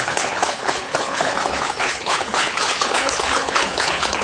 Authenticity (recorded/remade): remade